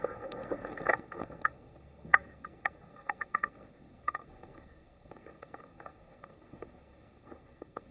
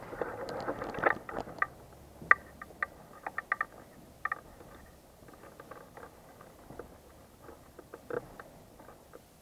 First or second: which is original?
second